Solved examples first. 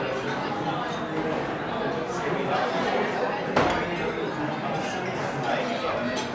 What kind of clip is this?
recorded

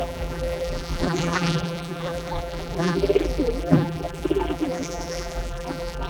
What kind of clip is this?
remade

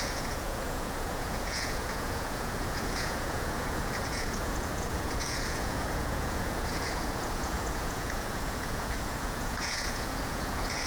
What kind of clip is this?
remade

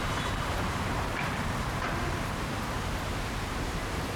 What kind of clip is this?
remade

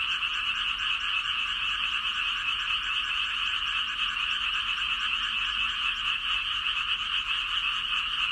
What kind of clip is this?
recorded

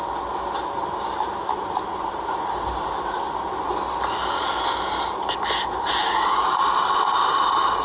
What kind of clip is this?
recorded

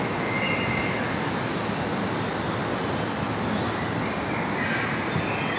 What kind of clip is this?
recorded